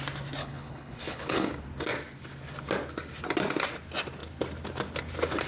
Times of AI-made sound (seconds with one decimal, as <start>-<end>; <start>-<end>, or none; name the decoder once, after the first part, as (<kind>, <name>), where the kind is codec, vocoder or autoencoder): 0.4-1.5 (codec, HILCodec)